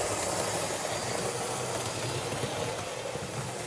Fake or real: real